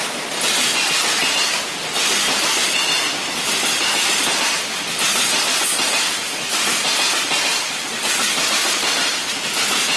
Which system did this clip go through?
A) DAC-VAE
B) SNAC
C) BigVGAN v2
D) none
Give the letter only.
D